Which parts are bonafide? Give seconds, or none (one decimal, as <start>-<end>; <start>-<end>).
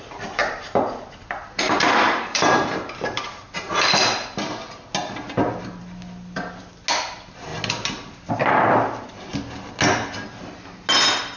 0.0-0.4; 3.9-11.4